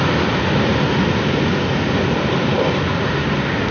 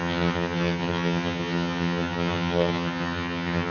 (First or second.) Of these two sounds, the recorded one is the first